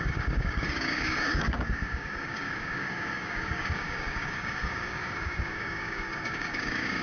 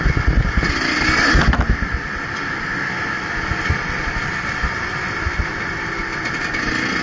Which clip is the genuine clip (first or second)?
second